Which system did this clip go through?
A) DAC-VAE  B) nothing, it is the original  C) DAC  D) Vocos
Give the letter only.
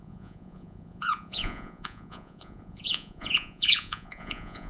D